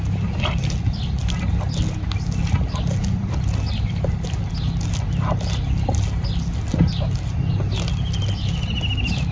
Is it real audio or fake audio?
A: real